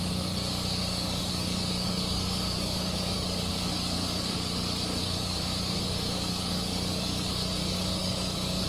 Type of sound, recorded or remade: remade